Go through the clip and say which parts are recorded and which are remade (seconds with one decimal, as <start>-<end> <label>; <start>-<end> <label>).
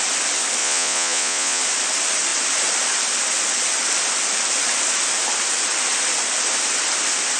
0.0-0.6 recorded; 0.6-1.6 remade; 1.6-7.4 recorded